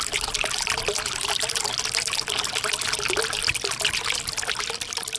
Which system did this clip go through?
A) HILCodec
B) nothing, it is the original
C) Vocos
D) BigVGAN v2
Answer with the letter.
B